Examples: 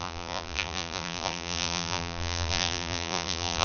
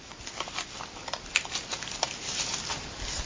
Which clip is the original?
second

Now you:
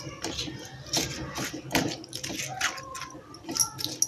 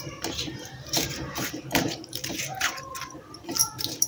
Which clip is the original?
first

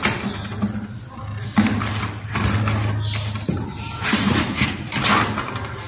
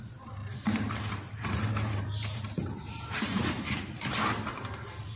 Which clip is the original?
first